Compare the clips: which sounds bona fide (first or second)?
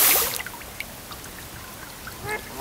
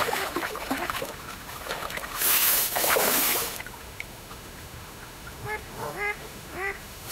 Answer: first